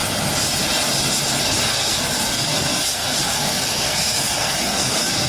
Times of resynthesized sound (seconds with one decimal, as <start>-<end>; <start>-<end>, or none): 1.7-5.3